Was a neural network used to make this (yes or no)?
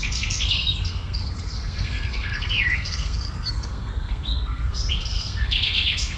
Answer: yes